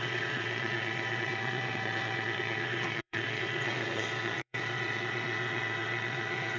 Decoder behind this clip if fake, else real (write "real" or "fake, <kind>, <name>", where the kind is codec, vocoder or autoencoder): fake, vocoder, WaveNeXt